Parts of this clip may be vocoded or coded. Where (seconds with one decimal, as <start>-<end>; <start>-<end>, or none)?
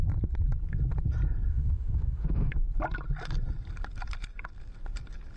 1.5-2.5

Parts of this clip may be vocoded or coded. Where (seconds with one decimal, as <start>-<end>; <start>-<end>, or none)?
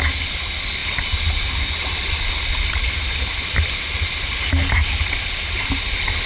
none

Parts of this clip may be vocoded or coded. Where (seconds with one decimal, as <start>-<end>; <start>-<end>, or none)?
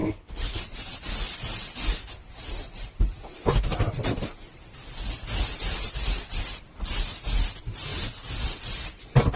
0.0-0.6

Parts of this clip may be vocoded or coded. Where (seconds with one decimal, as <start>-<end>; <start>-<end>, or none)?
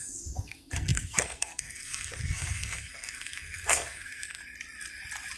0.0-4.4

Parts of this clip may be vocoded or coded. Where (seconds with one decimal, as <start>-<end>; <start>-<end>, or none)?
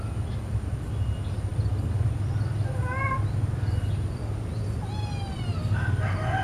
none